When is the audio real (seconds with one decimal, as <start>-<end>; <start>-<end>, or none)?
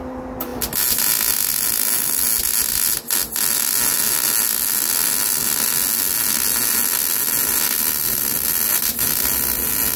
0.0-10.0